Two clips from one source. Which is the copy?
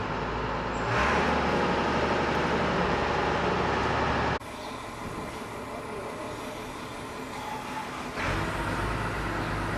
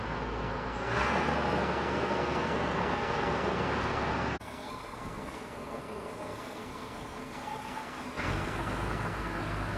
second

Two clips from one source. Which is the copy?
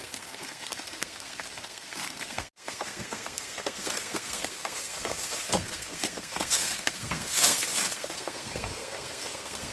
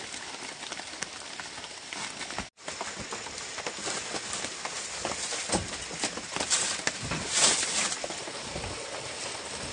first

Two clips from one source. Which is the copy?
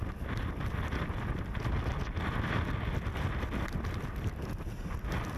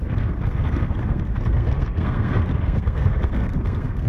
second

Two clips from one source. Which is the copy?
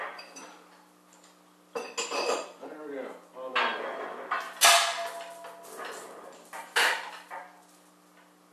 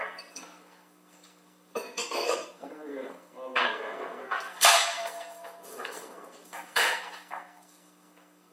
second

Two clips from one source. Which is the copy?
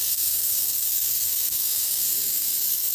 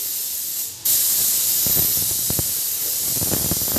first